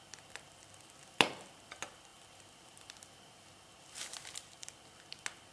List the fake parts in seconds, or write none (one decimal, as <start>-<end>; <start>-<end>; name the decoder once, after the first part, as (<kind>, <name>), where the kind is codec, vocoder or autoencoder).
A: none